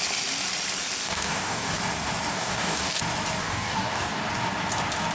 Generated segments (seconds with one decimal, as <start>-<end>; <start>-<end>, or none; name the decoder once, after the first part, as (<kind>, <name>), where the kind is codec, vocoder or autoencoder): 1.0-1.8 (codec, DAC); 2.3-3.0; 3.4-4.2

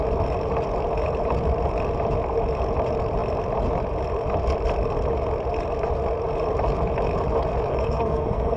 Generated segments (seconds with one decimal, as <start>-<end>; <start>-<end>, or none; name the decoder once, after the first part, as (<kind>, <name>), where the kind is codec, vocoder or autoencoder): 7.7-8.6 (codec, SNAC)